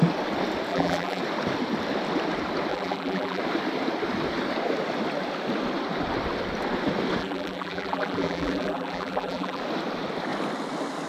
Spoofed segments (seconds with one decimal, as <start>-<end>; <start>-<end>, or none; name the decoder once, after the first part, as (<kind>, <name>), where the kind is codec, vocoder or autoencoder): 0.7-1.2 (vocoder, BigVGAN v2); 2.7-3.4; 7.2-9.6